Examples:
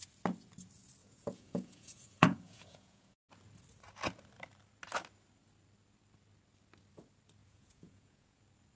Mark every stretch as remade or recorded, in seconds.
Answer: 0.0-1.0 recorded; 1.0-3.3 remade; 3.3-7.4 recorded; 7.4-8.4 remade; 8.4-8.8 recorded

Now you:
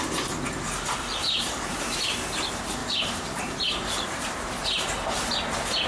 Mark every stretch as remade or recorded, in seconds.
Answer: 0.0-1.2 recorded; 1.2-1.9 remade; 1.9-2.8 recorded; 2.8-5.3 remade; 5.3-5.9 recorded

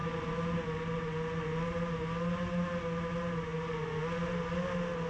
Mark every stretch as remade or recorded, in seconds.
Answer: 0.0-5.1 recorded

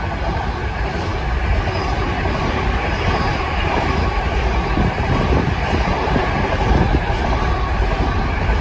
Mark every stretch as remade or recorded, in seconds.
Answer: 0.0-8.6 remade